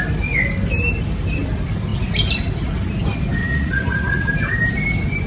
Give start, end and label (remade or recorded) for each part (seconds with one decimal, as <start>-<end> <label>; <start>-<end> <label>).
0.0-3.4 recorded; 3.4-4.3 remade; 4.3-5.3 recorded